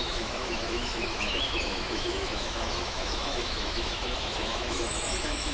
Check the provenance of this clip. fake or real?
fake